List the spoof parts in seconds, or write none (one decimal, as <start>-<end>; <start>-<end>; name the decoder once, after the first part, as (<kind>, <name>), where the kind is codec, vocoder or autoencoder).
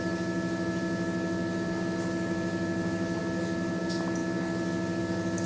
none